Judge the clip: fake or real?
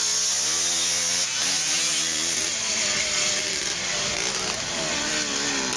real